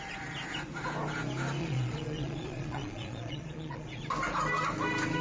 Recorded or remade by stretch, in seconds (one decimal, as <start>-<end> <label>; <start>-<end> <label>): 0.0-1.6 recorded; 1.6-4.0 remade; 4.0-5.2 recorded